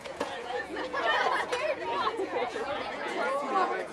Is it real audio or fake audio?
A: fake